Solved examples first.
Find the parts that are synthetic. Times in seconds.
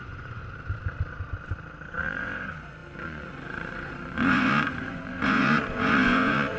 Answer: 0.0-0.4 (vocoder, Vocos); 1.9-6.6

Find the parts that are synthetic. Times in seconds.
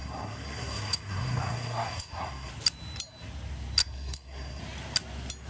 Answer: 0.0-2.5 (codec, SNAC); 3.8-4.6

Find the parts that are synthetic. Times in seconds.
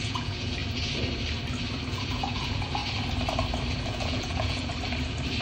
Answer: 0.0-0.6 (vocoder, Vocos); 1.9-2.8; 3.7-4.7